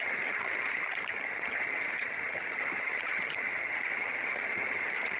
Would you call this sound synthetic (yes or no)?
yes